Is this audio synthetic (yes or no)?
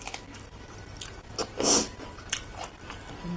no